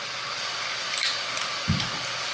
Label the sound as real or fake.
real